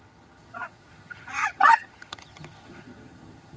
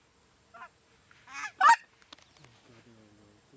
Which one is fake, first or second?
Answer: first